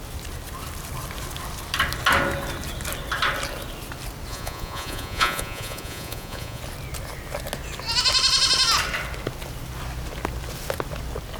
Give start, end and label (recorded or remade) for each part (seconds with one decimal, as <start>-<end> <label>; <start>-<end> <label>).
0.0-4.3 recorded; 4.3-6.6 remade; 6.6-11.4 recorded